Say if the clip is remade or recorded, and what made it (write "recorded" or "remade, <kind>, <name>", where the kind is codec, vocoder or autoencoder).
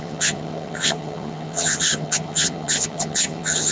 remade, vocoder, HiFi-GAN